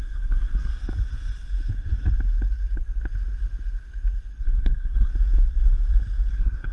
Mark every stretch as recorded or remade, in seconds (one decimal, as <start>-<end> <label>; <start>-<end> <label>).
0.0-0.7 remade; 0.7-4.4 recorded; 4.4-5.1 remade; 5.1-6.3 recorded; 6.3-6.7 remade